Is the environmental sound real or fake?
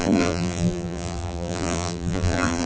fake